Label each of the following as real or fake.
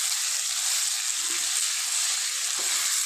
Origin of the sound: real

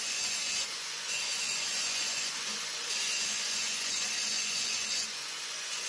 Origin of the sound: fake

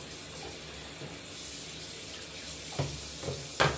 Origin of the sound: real